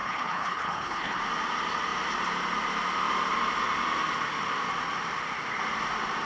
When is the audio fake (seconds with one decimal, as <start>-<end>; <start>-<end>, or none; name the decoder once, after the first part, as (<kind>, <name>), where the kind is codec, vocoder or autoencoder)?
0.0-1.2 (codec, HILCodec)